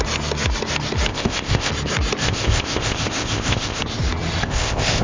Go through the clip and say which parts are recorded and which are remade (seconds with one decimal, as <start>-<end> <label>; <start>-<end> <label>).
0.0-1.1 recorded; 1.1-1.7 remade; 1.7-2.2 recorded; 2.2-3.8 remade; 3.8-4.4 recorded; 4.4-5.0 remade